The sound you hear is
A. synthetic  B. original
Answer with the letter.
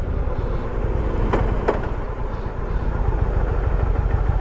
B